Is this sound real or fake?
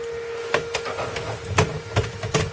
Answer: real